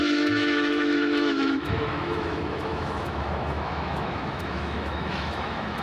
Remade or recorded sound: remade